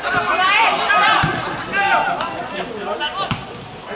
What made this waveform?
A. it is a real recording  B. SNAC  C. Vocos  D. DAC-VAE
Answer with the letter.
A